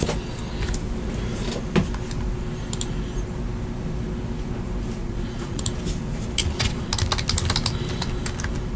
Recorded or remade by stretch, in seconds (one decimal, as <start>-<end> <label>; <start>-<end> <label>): 0.0-5.0 recorded; 5.0-5.6 remade; 5.6-6.4 recorded; 6.4-6.9 remade; 6.9-8.8 recorded